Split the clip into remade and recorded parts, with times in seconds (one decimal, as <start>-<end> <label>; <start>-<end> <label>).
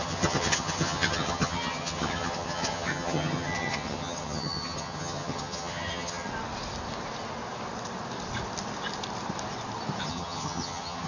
0.0-6.3 remade; 6.3-10.0 recorded; 10.0-11.1 remade